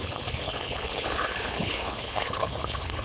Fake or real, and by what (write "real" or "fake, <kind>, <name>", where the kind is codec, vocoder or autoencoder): fake, codec, HILCodec